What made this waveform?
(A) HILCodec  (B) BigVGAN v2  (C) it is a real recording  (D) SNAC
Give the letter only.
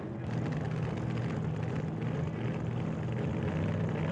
C